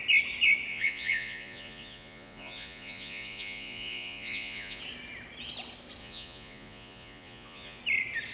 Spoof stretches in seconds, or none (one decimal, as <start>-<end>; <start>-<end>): 0.7-4.8; 6.0-7.8